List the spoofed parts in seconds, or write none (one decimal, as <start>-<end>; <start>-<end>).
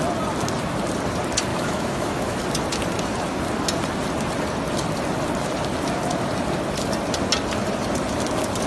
1.5-2.4